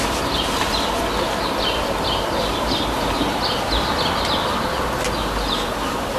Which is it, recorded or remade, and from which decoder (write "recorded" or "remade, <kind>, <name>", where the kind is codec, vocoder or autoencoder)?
recorded